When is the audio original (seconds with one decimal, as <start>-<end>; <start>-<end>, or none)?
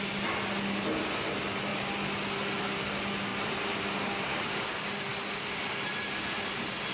0.0-6.9